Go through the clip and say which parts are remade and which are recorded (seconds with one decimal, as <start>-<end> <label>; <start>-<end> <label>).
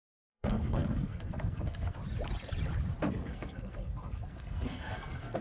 0.0-2.0 remade; 2.0-3.1 recorded; 3.1-5.4 remade